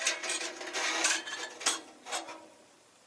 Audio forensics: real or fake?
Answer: fake